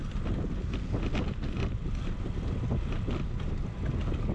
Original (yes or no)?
yes